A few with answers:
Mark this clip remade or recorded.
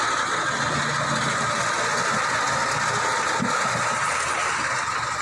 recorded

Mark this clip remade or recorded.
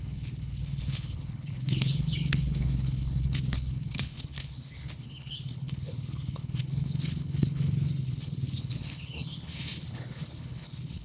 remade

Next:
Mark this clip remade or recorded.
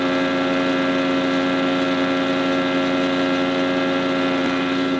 recorded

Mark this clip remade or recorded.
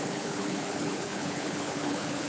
remade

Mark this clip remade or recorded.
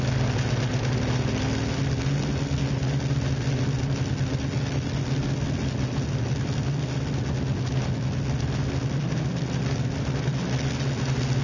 recorded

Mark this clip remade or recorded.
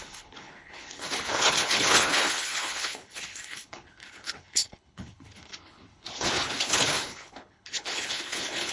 remade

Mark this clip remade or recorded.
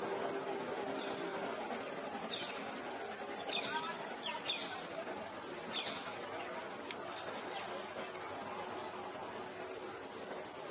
recorded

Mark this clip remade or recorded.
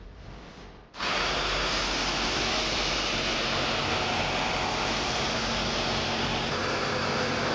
recorded